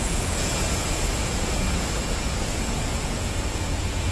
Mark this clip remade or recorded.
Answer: remade